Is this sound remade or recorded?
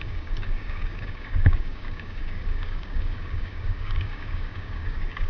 remade